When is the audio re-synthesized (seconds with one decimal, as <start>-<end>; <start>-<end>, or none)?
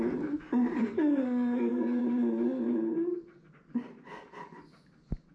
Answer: 0.8-2.0